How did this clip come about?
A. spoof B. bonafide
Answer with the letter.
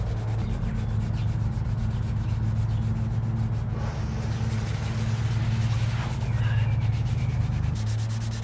B